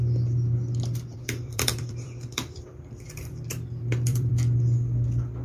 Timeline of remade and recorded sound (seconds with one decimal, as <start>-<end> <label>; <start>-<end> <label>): 0.0-1.1 recorded; 1.1-4.3 remade; 4.3-5.4 recorded